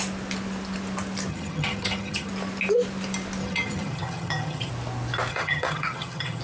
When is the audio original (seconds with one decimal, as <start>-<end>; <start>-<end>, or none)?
0.0-1.3; 2.3-3.4; 4.7-5.3